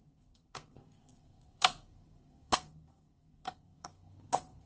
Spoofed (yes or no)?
yes